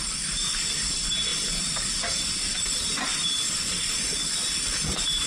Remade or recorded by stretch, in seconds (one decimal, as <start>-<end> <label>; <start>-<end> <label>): 0.0-1.3 remade; 1.3-3.5 recorded; 3.5-4.2 remade; 4.2-5.3 recorded